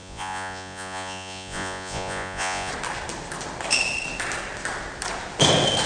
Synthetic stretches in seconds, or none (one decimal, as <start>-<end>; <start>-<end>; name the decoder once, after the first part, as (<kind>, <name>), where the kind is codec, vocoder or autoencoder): 0.0-2.7 (vocoder, Vocos)